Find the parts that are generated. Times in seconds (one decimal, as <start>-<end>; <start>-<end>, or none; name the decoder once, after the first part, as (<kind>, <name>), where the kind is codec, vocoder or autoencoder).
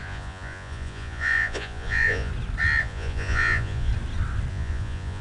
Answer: 0.0-2.3 (vocoder, Vocos); 2.8-3.9; 4.5-5.2